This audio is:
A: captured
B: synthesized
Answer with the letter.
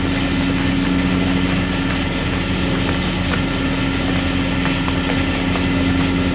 A